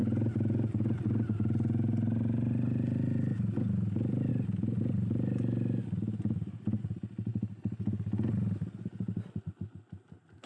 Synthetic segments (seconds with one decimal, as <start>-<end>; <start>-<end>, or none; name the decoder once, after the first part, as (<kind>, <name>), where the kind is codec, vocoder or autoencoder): none